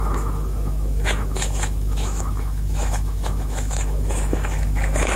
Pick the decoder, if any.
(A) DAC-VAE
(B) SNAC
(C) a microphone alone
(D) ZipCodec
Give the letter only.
A